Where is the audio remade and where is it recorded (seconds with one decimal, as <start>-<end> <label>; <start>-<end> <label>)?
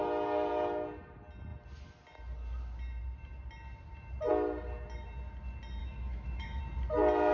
0.0-5.8 recorded; 5.8-6.6 remade; 6.6-7.3 recorded